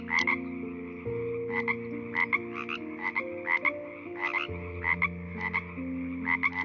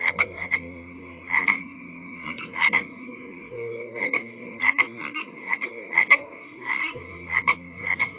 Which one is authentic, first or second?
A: first